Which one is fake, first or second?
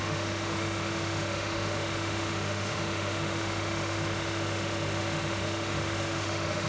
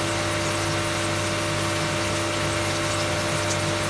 first